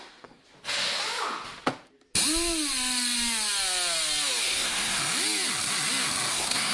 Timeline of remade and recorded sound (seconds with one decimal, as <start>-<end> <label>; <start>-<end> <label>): 0.0-0.4 remade; 0.4-4.4 recorded; 4.4-5.0 remade; 5.0-6.3 recorded; 6.3-6.7 remade